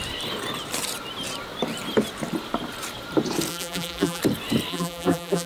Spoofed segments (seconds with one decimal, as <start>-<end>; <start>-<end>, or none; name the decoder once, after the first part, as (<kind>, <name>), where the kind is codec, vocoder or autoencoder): 3.5-4.2 (vocoder, BigVGAN v2); 4.7-5.5